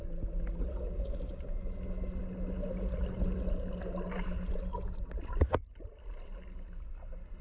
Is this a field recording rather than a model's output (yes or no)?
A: yes